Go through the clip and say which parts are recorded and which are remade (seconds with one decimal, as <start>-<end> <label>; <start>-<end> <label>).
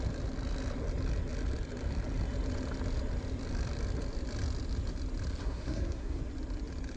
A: 0.0-5.4 recorded; 5.4-6.2 remade; 6.2-7.0 recorded